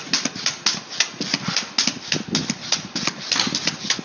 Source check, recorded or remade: recorded